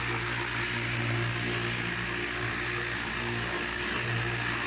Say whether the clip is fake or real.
real